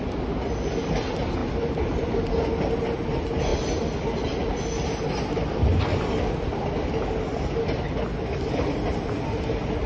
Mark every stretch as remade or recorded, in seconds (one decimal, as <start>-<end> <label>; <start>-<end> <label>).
0.0-9.9 recorded

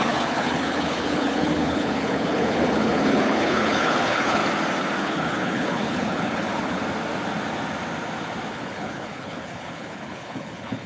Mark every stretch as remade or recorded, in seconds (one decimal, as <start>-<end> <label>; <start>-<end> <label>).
0.0-4.4 remade; 4.4-5.0 recorded; 5.0-6.8 remade; 6.8-8.5 recorded; 8.5-10.9 remade